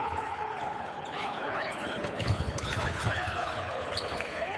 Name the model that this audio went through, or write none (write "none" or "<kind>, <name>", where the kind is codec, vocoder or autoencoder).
codec, HILCodec